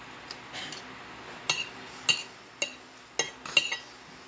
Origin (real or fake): real